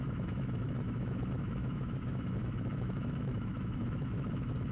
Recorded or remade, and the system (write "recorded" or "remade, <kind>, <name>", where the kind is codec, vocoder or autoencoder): remade, autoencoder, DAC-VAE